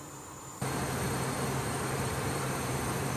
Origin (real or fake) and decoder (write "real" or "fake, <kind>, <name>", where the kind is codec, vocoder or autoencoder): fake, vocoder, BigVGAN v2